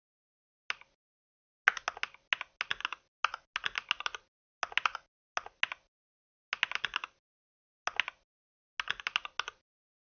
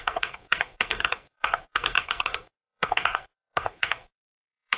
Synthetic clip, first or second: second